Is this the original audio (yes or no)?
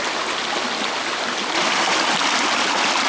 yes